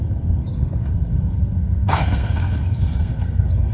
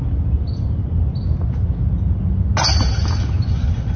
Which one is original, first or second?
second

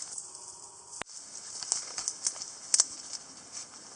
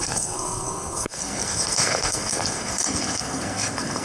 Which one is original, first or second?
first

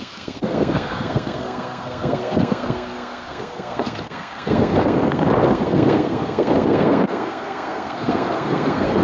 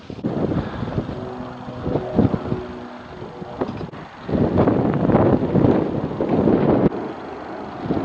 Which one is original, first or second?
second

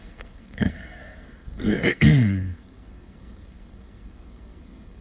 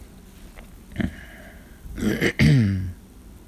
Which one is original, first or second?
second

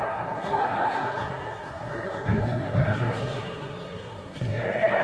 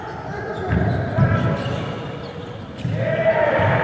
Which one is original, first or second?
second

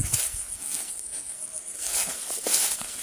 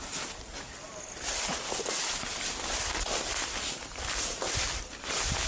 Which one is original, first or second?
second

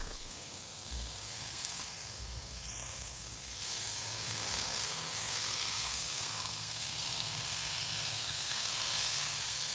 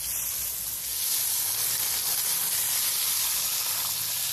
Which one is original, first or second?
second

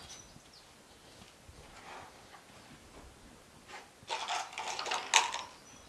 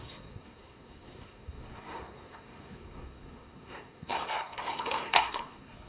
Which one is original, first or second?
first